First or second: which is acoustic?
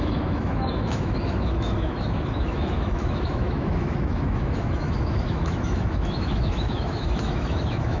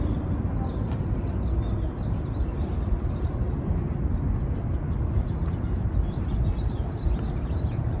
second